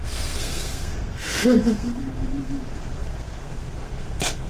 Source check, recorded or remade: remade